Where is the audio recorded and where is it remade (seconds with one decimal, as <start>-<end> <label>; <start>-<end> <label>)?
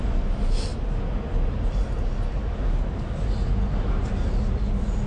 0.0-5.1 recorded